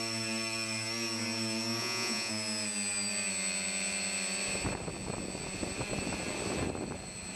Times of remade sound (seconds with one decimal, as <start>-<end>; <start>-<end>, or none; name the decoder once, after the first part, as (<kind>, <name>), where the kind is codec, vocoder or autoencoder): 1.8-2.3 (vocoder, Vocos)